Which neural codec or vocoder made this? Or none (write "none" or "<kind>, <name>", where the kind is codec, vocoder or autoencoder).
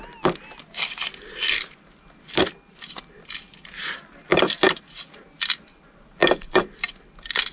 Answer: none